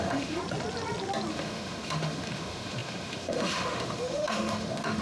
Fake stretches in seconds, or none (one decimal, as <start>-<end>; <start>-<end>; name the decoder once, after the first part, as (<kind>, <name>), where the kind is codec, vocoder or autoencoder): 0.0-0.4 (autoencoder, DAC-VAE); 1.3-5.0